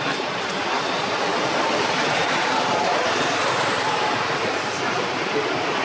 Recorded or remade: remade